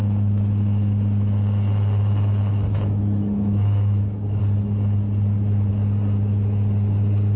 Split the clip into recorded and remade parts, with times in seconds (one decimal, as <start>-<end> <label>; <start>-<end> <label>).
0.0-4.4 remade; 4.4-7.4 recorded